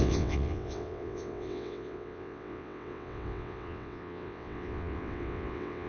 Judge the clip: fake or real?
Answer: fake